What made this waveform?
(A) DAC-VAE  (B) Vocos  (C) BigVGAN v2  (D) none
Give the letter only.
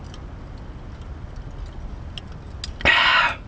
D